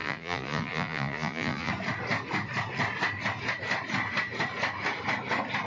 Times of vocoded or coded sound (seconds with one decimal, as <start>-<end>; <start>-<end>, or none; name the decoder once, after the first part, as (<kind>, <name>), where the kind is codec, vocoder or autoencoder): 0.0-1.7 (vocoder, Vocos)